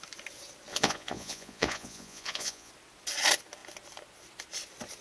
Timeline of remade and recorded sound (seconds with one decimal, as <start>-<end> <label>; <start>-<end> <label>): 0.0-0.7 recorded; 0.7-2.7 remade; 2.7-5.0 recorded